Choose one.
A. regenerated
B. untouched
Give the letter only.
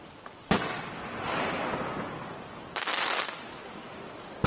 B